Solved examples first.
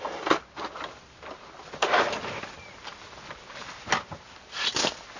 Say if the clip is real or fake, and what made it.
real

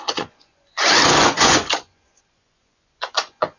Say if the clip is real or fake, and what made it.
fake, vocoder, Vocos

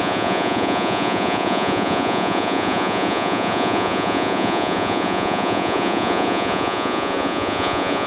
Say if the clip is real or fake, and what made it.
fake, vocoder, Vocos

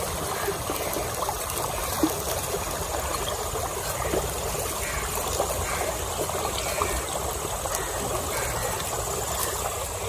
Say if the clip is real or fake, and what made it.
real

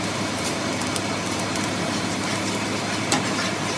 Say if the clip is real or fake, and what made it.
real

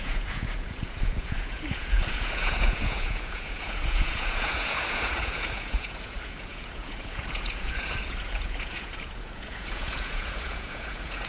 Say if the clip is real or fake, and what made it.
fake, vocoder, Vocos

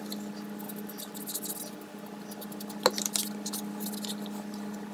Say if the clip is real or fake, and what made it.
real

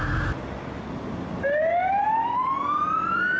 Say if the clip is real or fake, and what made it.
real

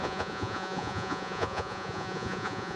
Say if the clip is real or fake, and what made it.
fake, vocoder, Vocos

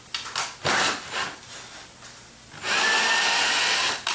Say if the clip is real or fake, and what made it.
real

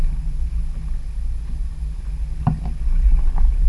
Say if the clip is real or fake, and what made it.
real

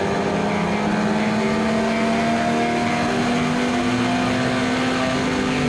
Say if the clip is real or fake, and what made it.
real